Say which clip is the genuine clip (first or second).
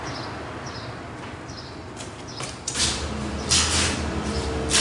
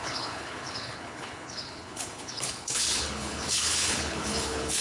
first